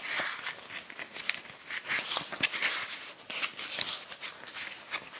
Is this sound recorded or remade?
recorded